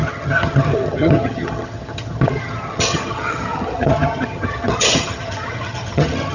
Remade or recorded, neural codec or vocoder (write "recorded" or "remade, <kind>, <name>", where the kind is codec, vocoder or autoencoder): remade, vocoder, HiFi-GAN